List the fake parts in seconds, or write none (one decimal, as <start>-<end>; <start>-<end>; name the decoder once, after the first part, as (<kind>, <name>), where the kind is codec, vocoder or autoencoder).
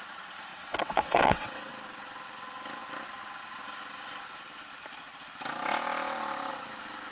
0.5-1.7 (vocoder, WaveNeXt)